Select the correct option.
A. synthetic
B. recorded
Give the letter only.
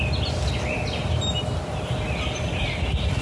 B